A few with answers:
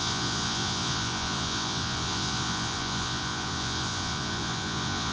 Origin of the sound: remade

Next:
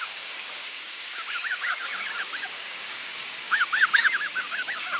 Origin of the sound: remade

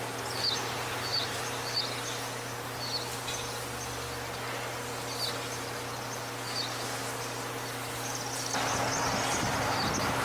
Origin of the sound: recorded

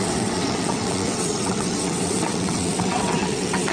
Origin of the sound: remade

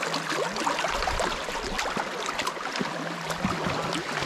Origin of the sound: recorded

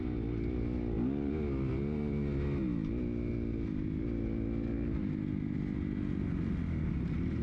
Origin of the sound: recorded